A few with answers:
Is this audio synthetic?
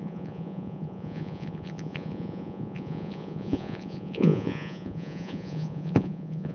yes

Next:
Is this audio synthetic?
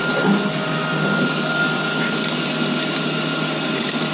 no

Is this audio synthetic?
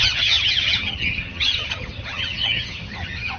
yes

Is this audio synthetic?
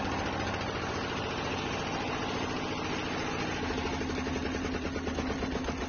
no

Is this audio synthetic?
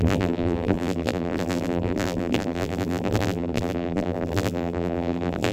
yes